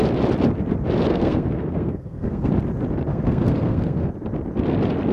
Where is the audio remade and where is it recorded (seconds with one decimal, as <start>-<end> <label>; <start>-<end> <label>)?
0.0-1.1 recorded; 1.1-2.5 remade; 2.5-3.1 recorded; 3.1-4.1 remade; 4.1-5.1 recorded